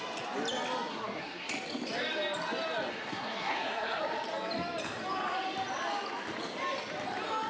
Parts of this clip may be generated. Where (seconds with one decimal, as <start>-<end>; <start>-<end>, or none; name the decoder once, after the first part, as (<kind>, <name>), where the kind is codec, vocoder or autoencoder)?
0.9-1.5 (codec, SNAC); 2.9-4.0